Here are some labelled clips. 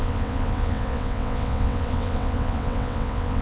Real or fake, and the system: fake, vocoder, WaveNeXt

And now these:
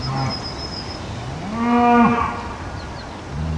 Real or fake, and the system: real